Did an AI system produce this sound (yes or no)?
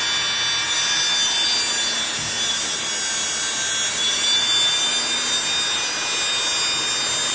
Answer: no